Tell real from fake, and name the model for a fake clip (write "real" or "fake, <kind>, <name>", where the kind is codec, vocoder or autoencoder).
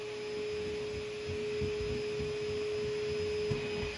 real